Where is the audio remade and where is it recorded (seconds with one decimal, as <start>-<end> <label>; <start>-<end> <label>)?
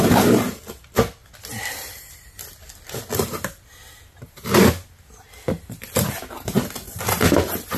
0.0-7.8 recorded